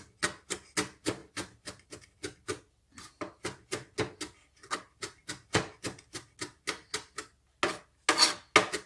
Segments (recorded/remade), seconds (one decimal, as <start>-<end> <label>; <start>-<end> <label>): 0.0-1.2 recorded; 1.2-1.9 remade; 1.9-8.9 recorded